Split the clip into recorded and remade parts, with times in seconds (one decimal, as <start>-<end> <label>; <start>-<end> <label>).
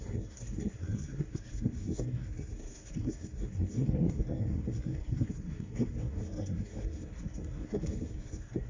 0.0-8.7 remade